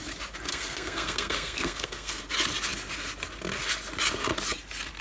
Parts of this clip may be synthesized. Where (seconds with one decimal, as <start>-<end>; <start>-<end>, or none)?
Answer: 0.5-2.2